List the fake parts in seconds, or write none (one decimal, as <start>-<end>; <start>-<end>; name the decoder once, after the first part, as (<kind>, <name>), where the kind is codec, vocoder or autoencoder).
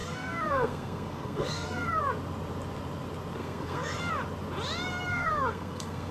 0.0-2.0 (codec, SNAC); 3.4-4.1; 5.1-6.1